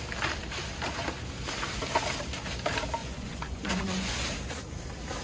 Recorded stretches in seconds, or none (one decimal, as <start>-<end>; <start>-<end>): 0.0-3.0; 4.1-5.2